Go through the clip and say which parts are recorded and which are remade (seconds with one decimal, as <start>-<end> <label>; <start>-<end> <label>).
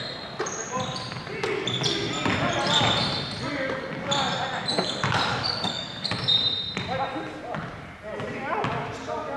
0.0-5.3 recorded; 5.3-6.1 remade; 6.1-9.4 recorded